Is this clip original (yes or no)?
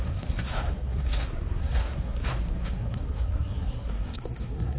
no